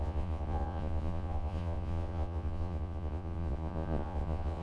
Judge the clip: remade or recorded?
remade